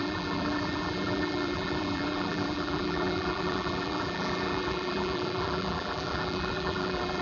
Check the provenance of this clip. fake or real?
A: fake